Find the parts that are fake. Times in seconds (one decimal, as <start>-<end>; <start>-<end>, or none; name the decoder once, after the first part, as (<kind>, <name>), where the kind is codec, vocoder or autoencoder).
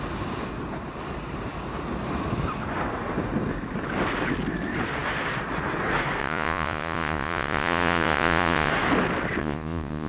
6.2-8.7 (vocoder, Vocos); 9.4-10.1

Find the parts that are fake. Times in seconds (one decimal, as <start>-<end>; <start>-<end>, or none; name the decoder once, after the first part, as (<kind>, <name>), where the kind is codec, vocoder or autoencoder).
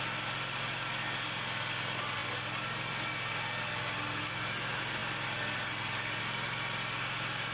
none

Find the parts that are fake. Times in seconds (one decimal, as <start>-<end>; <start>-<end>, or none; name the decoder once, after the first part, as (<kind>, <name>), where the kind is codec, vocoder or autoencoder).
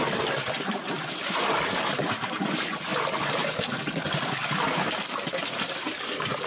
none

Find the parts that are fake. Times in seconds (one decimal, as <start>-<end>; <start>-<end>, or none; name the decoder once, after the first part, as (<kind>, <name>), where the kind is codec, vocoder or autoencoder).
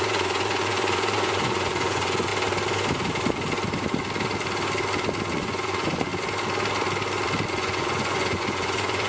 0.0-2.3 (vocoder, Vocos); 5.3-6.1; 7.5-9.1